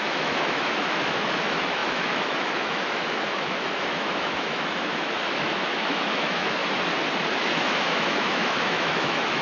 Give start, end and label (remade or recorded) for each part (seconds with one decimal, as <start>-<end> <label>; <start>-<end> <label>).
0.0-6.6 remade; 6.6-7.3 recorded; 7.3-9.4 remade